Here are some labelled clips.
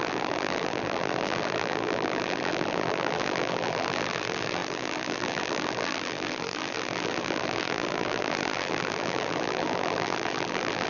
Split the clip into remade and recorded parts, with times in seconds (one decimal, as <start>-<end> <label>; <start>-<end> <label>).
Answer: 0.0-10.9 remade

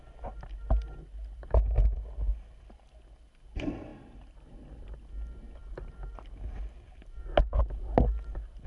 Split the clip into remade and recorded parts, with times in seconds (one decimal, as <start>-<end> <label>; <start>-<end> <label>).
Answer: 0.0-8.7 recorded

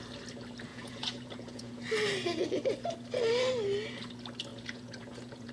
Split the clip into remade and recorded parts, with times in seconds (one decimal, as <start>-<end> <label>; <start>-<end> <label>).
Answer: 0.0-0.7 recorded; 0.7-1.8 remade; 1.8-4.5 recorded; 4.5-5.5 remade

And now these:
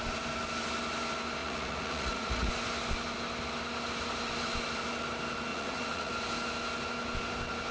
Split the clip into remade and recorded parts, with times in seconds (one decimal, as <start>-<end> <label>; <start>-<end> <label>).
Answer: 0.0-1.4 recorded; 1.4-2.5 remade; 2.5-5.5 recorded; 5.5-6.1 remade; 6.1-7.7 recorded